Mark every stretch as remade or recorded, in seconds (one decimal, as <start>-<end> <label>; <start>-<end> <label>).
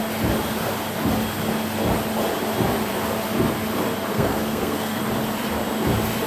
0.0-4.1 recorded; 4.1-5.0 remade; 5.0-6.3 recorded